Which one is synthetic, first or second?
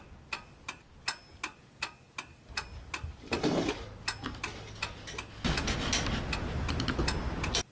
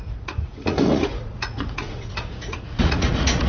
second